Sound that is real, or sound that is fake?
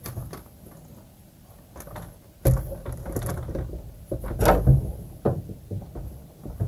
real